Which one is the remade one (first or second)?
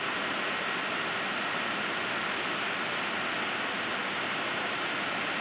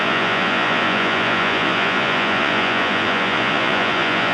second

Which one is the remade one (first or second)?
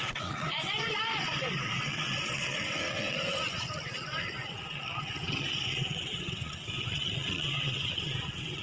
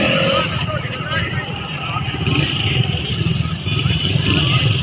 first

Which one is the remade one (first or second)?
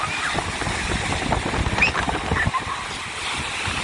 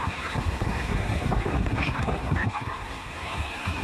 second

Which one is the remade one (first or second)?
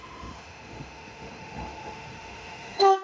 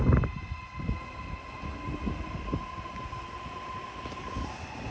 first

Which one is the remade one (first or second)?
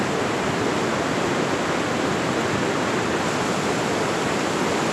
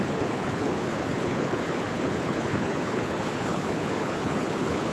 second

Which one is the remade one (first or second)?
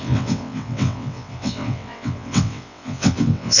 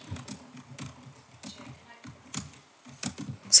first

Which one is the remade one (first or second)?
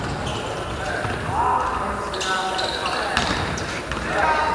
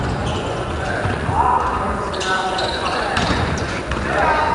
second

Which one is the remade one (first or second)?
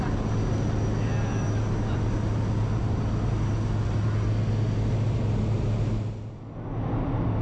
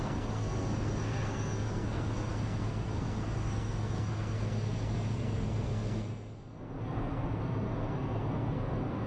second